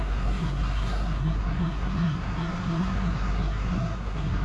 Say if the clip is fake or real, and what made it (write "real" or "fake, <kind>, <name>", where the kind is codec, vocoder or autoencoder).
fake, codec, SNAC